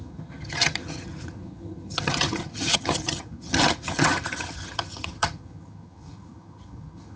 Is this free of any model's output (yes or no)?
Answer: no